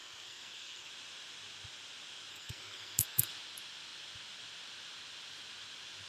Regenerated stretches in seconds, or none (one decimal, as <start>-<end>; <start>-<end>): 0.0-0.9; 2.3-3.3